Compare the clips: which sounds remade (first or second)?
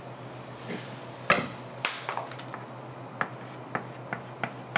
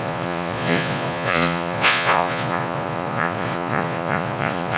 second